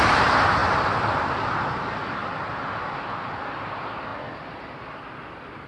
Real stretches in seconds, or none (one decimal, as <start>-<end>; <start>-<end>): 0.0-4.1